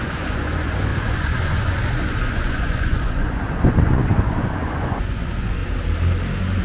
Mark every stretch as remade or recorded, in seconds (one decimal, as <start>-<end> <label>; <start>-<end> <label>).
0.0-5.6 remade; 5.6-6.6 recorded